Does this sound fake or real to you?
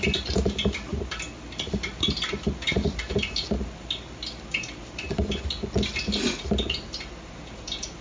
real